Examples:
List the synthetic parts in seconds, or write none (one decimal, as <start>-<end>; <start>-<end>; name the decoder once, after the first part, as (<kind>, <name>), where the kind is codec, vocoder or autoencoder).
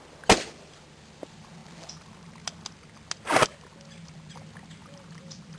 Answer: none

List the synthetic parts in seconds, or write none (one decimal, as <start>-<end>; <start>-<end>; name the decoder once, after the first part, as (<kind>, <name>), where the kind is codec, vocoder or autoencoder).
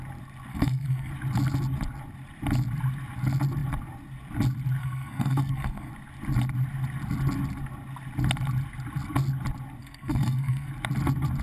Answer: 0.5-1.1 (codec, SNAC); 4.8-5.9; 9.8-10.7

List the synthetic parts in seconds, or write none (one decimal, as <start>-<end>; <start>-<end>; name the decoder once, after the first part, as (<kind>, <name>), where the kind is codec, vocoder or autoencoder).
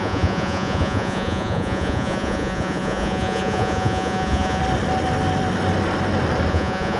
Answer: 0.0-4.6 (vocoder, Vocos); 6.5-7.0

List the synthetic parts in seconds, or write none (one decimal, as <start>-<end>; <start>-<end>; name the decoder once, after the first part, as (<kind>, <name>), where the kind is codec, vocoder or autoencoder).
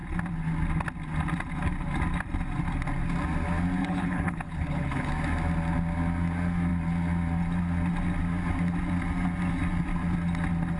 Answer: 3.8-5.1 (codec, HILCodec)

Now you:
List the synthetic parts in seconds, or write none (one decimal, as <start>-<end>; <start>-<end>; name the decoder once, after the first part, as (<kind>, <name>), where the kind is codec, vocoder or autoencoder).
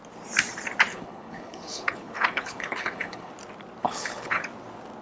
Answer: 0.9-3.3 (codec, HILCodec); 3.8-4.4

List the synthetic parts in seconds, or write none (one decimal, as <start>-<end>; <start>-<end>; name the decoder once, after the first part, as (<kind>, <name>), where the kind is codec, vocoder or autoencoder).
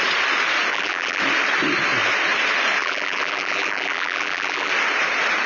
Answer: 0.7-1.2 (vocoder, BigVGAN v2); 2.8-4.7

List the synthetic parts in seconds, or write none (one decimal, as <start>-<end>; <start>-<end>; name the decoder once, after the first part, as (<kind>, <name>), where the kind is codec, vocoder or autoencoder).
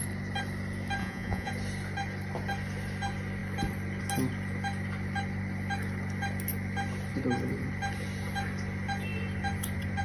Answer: 1.0-1.5 (vocoder, Vocos)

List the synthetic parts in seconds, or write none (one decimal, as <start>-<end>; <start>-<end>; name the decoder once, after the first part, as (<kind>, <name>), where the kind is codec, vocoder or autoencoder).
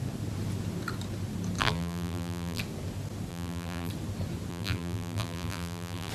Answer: 1.6-2.6 (vocoder, BigVGAN v2); 3.3-3.9; 4.5-6.1